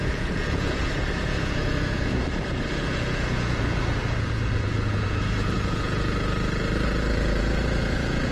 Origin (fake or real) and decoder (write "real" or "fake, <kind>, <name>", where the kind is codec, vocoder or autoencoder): fake, vocoder, Vocos